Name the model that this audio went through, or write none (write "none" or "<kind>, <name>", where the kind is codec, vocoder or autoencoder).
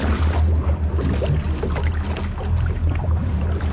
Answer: none